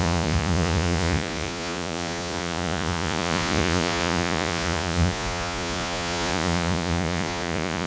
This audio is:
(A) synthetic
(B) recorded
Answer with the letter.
A